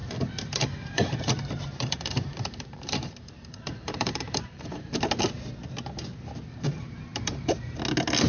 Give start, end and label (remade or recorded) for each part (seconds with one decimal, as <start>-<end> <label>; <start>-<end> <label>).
0.0-5.0 remade; 5.0-7.1 recorded; 7.1-7.8 remade; 7.8-8.3 recorded